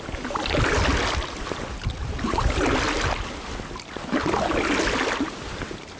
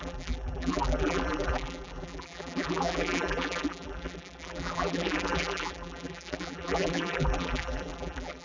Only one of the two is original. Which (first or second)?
first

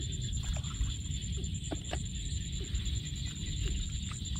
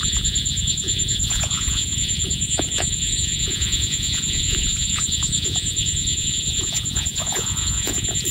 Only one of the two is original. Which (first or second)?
first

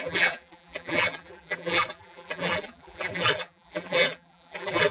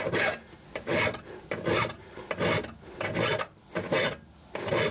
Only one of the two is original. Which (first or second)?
second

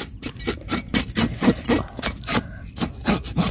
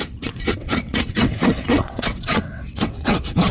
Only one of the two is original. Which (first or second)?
first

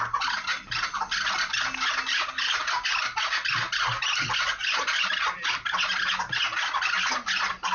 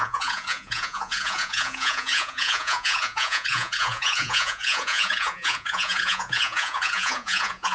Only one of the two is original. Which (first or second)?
first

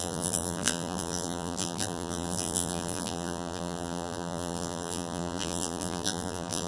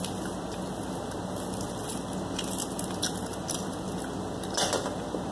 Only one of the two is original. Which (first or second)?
second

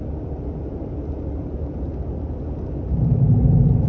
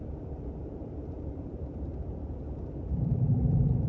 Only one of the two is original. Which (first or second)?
first